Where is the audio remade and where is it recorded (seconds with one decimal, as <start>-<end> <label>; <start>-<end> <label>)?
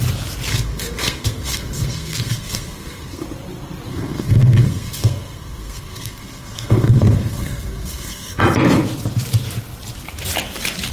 0.0-0.5 recorded; 0.5-3.2 remade; 3.2-3.9 recorded; 3.9-8.4 remade; 8.4-10.9 recorded